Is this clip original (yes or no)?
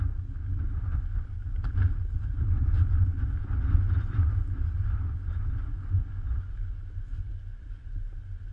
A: yes